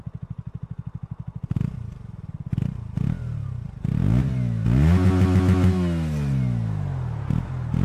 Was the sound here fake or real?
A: real